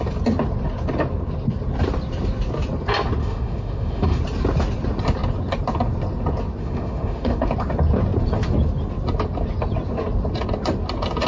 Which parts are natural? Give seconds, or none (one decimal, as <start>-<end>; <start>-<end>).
0.0-3.2; 4.2-6.6; 7.5-11.3